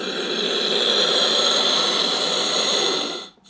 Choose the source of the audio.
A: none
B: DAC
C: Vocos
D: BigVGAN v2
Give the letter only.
A